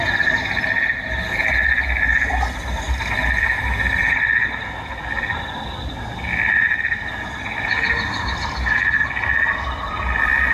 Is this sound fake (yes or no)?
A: no